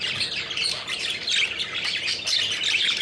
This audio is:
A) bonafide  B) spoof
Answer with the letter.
A